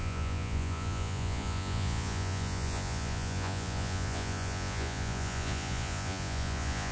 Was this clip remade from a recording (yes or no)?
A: yes